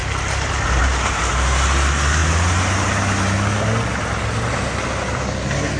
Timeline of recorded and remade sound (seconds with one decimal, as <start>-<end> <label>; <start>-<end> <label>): 0.0-5.8 recorded